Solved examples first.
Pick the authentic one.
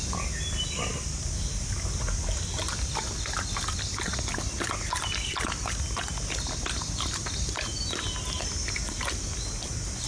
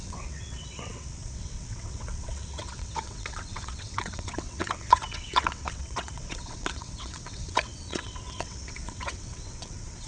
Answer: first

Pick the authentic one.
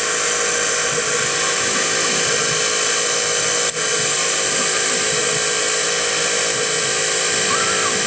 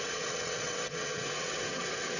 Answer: first